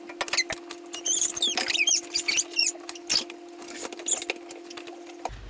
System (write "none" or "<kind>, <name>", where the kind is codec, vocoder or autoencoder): none